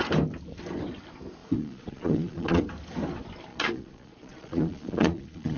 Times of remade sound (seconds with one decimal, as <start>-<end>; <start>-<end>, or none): 1.4-2.6; 3.5-5.6